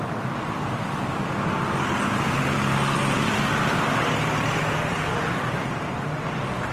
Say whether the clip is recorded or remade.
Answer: recorded